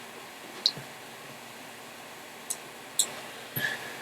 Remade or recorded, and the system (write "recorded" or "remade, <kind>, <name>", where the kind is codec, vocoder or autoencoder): recorded